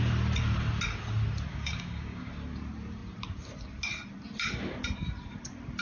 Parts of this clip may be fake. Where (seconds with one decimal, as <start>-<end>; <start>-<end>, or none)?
1.5-2.3